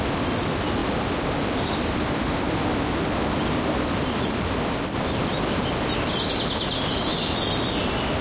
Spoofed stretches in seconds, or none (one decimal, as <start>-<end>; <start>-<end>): none